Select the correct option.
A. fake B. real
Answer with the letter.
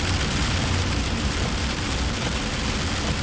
B